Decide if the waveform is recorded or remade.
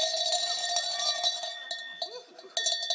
recorded